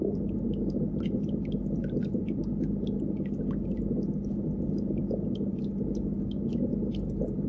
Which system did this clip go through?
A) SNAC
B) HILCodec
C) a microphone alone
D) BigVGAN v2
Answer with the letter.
C